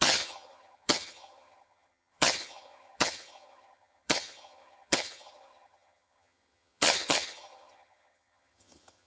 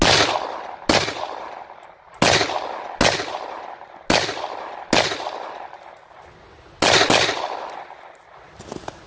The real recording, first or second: second